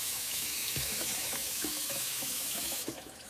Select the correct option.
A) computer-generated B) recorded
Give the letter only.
A